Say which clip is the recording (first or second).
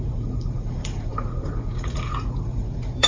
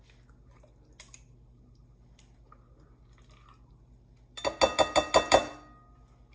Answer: second